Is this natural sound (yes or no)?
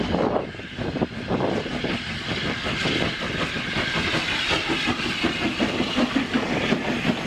yes